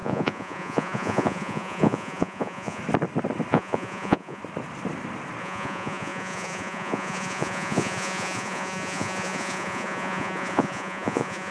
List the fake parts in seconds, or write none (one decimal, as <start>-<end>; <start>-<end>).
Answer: 0.0-2.8; 3.5-4.4; 5.4-11.5